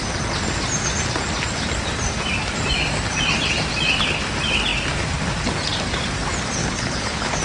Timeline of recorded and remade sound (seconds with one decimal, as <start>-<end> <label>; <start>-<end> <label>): 0.0-6.6 recorded; 6.6-7.4 remade